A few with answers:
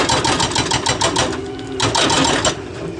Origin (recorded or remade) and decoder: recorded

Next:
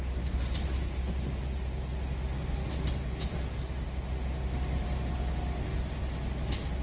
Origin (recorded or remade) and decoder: recorded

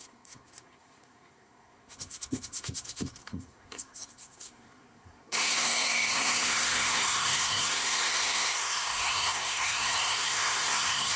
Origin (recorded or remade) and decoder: remade, codec, SNAC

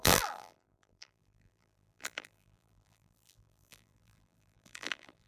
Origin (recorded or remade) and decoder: remade, vocoder, BigVGAN v2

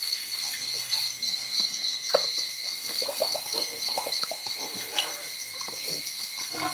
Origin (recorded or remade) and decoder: remade, codec, SNAC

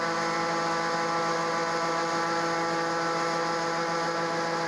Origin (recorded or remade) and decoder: recorded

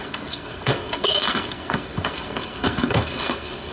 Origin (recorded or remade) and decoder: remade, codec, SNAC